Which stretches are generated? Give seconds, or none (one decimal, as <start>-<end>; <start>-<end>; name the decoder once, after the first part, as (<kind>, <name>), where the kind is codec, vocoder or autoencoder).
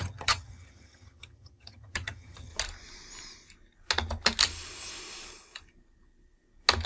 0.0-2.5 (vocoder, HiFi-GAN)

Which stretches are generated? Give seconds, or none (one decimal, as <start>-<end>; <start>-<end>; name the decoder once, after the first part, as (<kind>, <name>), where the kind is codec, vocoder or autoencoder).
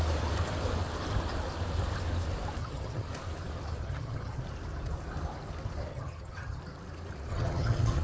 2.6-3.1 (vocoder, HiFi-GAN); 3.8-4.4; 5.9-6.6; 7.3-8.0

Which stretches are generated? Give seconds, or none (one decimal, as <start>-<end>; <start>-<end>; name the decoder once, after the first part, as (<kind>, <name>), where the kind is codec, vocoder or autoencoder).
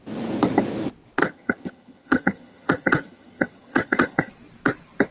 1.2-4.3 (vocoder, HiFi-GAN)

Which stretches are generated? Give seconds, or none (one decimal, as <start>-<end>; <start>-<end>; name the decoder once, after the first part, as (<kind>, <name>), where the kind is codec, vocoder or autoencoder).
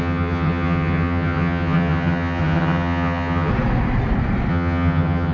0.0-3.5 (vocoder, HiFi-GAN); 4.5-5.3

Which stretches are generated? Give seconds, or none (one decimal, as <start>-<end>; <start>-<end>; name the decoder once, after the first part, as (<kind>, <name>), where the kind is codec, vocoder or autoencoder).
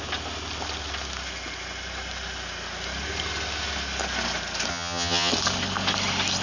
4.7-5.3 (vocoder, HiFi-GAN)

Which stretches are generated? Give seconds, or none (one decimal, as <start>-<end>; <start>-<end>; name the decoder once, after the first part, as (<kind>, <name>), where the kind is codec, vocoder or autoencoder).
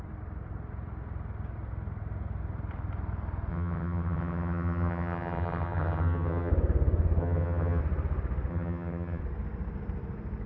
3.5-6.5 (vocoder, HiFi-GAN); 7.2-7.8; 8.5-9.2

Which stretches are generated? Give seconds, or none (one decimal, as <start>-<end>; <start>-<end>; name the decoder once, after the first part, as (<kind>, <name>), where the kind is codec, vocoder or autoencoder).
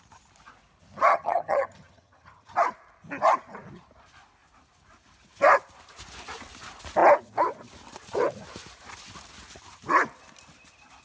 1.1-2.5 (vocoder, HiFi-GAN)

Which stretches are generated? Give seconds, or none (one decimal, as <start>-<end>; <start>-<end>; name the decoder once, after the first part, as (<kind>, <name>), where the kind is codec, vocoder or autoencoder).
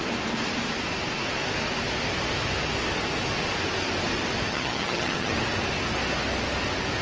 4.5-5.3 (vocoder, HiFi-GAN)